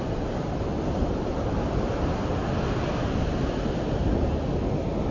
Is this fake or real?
real